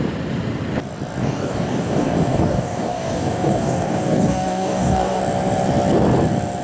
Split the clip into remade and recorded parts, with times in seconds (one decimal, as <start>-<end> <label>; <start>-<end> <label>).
0.0-1.2 recorded; 1.2-5.2 remade; 5.2-6.6 recorded